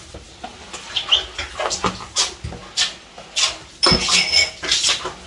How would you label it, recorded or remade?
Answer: recorded